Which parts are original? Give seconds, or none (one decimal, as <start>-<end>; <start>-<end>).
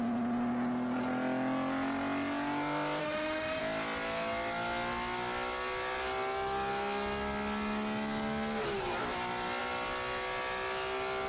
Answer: 0.0-3.0; 3.6-11.3